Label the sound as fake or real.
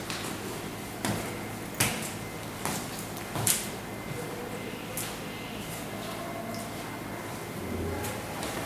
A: real